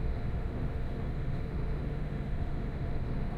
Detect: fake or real fake